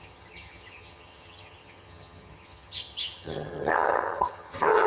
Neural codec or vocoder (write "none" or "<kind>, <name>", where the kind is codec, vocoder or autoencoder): vocoder, HiFi-GAN